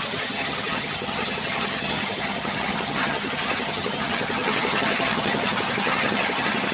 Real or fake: fake